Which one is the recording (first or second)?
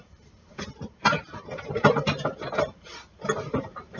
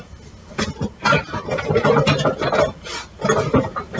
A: second